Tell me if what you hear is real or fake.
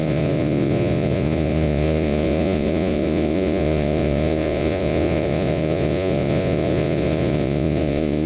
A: fake